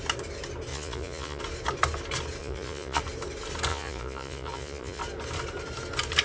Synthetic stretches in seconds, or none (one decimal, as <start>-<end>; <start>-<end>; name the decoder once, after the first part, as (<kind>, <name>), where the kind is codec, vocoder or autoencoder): 0.7-1.4 (vocoder, Vocos); 2.4-3.0; 3.7-5.0